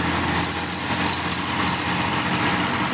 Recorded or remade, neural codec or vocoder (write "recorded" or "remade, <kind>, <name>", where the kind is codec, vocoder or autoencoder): recorded